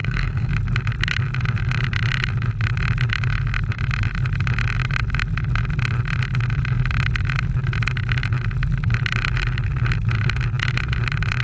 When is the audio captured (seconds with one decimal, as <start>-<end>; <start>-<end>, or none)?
0.5-11.4